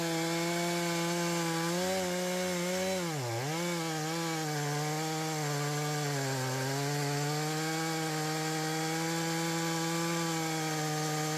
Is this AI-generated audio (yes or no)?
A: no